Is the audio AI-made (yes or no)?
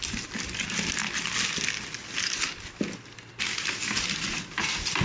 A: no